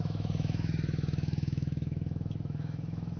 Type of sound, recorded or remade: remade